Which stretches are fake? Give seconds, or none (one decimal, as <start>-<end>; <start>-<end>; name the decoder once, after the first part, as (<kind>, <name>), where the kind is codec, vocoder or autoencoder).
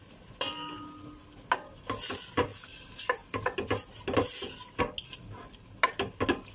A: none